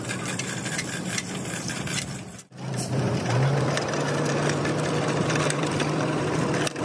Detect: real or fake fake